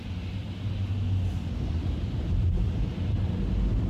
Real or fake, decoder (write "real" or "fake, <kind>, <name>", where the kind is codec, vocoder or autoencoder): real